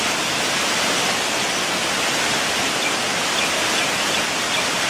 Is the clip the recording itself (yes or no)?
yes